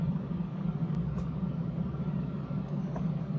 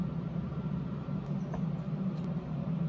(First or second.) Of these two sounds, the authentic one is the second